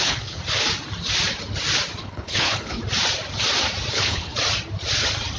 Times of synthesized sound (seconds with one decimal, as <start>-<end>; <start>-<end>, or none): 0.0-0.4; 2.0-2.8; 3.9-4.3